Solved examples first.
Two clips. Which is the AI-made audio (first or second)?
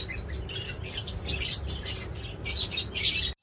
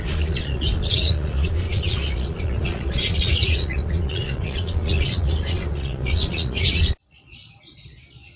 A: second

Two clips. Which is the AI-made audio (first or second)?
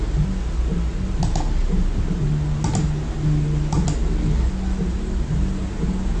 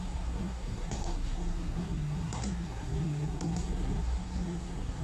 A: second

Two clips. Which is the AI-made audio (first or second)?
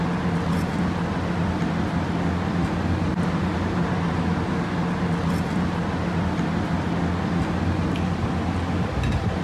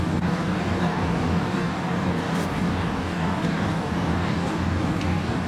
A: second